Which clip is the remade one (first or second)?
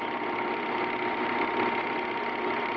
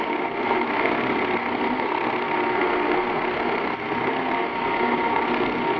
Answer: second